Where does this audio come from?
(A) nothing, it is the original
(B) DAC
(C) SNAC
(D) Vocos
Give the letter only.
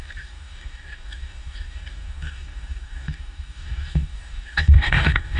B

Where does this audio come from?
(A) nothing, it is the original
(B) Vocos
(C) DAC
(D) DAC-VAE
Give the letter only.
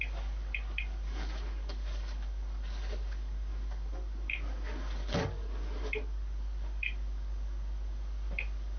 C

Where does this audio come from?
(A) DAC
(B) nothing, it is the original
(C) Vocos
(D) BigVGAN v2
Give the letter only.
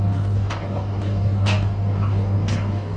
A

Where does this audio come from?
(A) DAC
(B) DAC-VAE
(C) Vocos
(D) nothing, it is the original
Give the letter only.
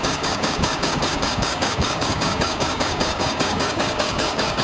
A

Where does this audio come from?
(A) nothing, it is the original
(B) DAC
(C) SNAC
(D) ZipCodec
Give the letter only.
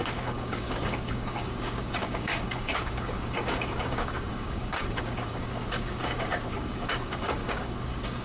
B